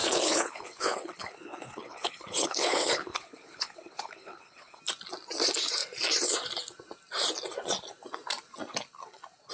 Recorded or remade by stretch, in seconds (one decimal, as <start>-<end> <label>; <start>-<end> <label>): 0.0-4.8 remade; 4.8-9.5 recorded